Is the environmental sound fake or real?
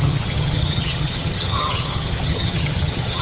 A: fake